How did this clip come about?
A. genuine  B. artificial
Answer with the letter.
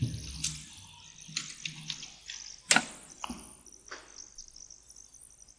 A